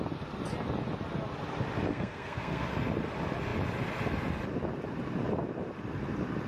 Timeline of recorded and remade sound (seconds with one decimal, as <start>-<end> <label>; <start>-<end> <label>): 0.0-1.9 recorded; 1.9-2.7 remade; 2.7-6.5 recorded